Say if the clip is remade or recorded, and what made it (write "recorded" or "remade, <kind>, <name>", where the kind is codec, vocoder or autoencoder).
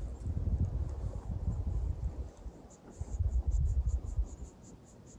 recorded